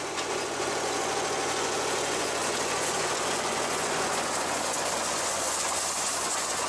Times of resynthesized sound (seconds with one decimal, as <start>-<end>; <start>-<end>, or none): 0.0-6.7